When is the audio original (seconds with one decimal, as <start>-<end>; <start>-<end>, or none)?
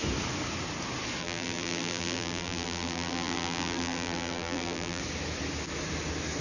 0.0-1.2; 5.0-6.4